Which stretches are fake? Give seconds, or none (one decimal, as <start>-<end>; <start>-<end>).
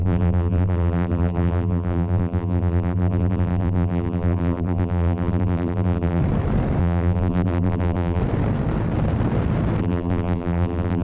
0.0-6.2; 6.8-8.2; 9.8-11.0